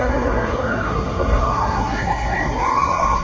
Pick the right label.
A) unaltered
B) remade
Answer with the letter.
B